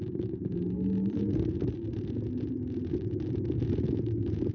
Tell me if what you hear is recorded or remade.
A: recorded